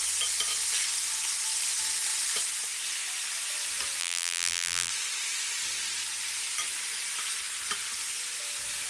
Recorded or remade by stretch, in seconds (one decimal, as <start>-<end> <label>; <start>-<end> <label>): 0.0-4.0 recorded; 4.0-4.9 remade; 4.9-8.9 recorded